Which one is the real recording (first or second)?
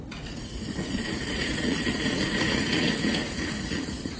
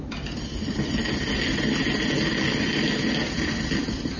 second